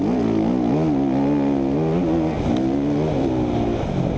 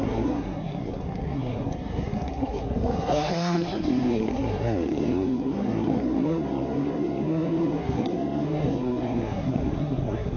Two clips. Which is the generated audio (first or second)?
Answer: second